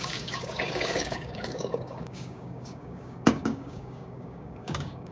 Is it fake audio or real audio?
fake